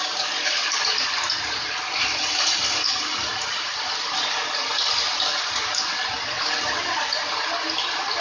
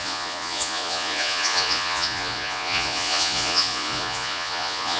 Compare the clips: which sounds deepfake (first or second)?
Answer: second